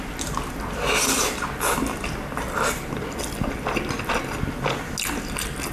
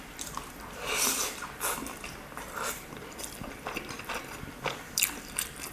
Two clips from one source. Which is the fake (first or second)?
second